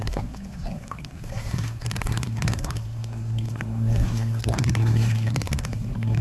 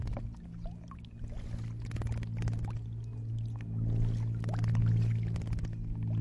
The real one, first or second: second